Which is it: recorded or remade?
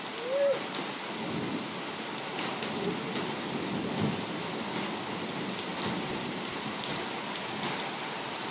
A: recorded